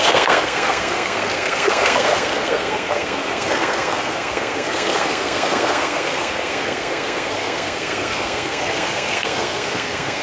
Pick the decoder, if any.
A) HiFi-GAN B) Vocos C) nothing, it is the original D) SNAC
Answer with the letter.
D